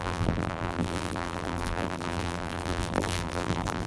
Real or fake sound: fake